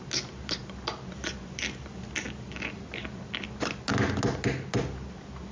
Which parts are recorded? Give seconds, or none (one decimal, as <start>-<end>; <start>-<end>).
0.0-5.5